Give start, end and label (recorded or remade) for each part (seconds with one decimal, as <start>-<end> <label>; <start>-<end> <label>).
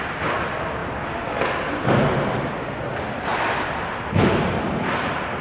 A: 0.0-5.4 recorded